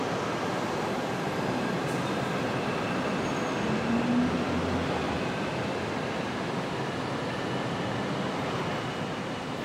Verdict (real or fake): real